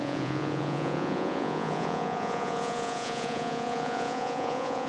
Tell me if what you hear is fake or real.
fake